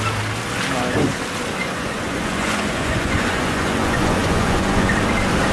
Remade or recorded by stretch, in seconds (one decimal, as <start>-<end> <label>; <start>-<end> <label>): 0.0-1.6 recorded; 1.6-4.9 remade; 4.9-5.5 recorded